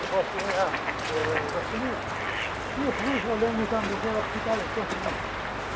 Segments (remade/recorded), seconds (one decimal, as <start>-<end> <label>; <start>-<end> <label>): 0.0-5.8 recorded